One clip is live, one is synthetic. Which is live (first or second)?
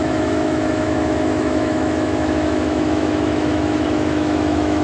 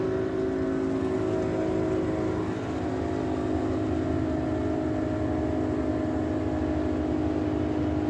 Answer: second